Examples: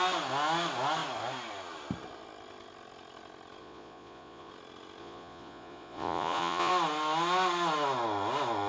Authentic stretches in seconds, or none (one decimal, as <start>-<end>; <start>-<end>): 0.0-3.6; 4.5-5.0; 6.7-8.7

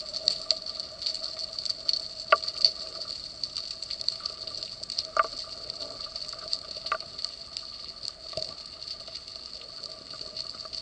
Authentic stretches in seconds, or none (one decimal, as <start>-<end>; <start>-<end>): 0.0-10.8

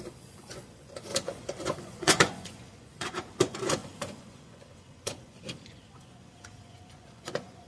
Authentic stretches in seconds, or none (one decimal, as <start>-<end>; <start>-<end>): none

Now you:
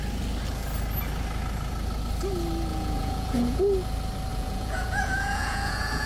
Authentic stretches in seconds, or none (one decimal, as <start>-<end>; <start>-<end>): 0.0-2.7; 3.6-4.3